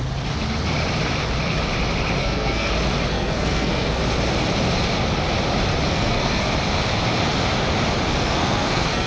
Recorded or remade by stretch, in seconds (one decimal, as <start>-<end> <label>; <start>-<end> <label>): 0.0-2.2 recorded; 2.2-2.7 remade; 2.7-3.1 recorded; 3.1-4.0 remade; 4.0-5.9 recorded; 5.9-6.5 remade; 6.5-8.1 recorded; 8.1-9.1 remade